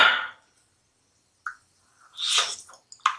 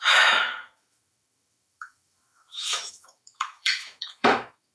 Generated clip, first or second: second